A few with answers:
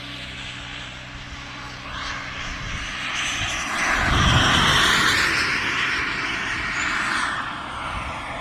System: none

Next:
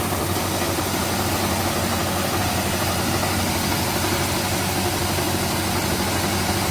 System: none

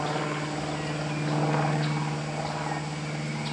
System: none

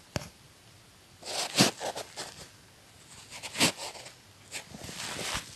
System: none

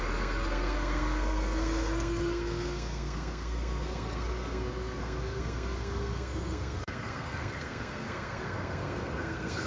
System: codec, SNAC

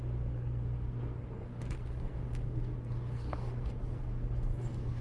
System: codec, SNAC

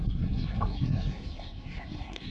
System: codec, SNAC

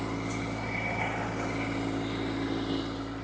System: none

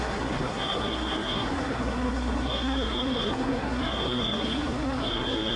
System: codec, SNAC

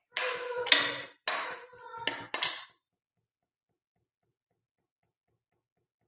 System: none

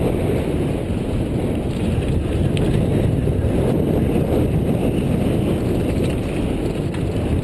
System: none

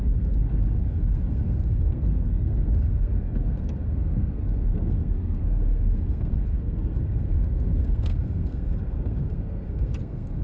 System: codec, SNAC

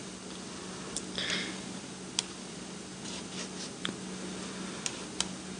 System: none